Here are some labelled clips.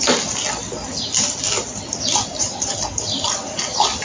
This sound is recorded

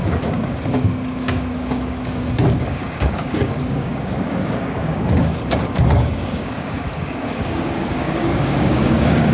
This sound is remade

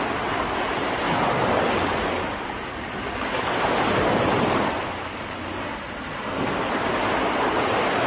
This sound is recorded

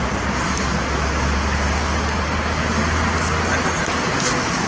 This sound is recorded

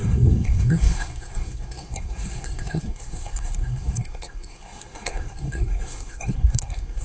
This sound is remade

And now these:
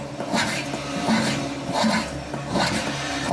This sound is recorded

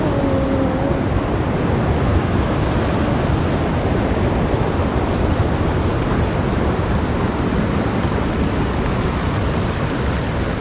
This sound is recorded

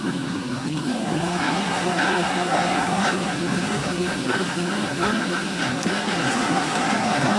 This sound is remade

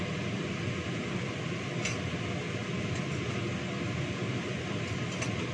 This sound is recorded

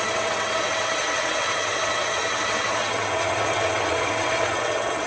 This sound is remade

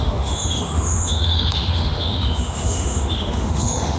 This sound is remade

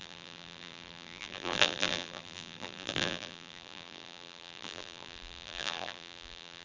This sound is remade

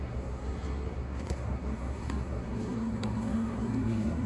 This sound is remade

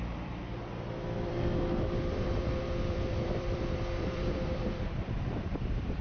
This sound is remade